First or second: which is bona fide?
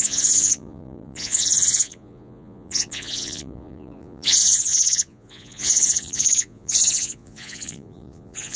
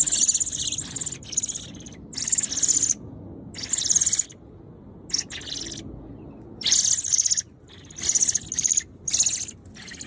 second